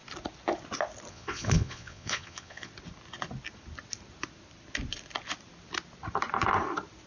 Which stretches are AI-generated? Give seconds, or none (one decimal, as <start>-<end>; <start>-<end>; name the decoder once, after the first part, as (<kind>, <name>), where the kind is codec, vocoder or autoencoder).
1.1-2.7 (vocoder, Vocos)